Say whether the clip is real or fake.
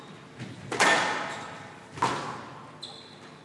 real